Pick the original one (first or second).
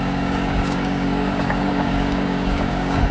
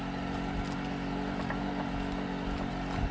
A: second